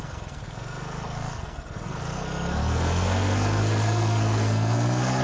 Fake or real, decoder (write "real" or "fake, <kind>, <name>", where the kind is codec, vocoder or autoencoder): fake, codec, SNAC